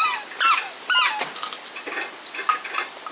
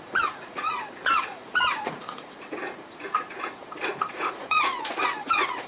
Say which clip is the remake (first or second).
second